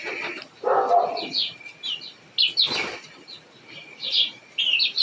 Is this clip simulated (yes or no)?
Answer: no